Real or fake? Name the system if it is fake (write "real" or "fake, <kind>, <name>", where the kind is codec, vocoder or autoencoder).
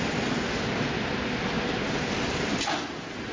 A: real